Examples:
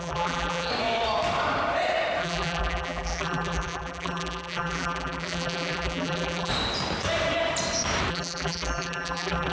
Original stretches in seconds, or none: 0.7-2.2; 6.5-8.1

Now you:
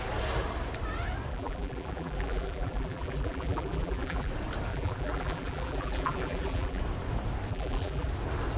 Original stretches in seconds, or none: 0.0-1.3; 4.3-4.7; 6.8-7.5; 8.1-8.6

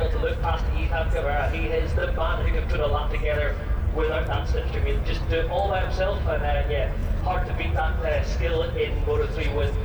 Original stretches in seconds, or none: 0.0-2.0; 3.1-7.0; 7.8-9.8

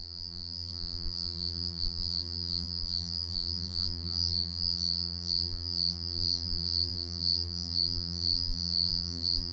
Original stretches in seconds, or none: none

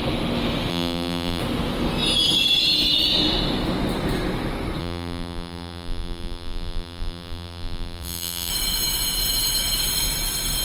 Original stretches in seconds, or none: 0.0-0.7; 1.4-4.8; 8.5-10.6